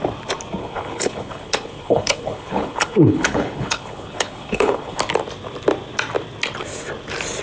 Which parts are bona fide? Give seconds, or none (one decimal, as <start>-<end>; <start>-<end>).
0.0-0.6; 5.0-7.4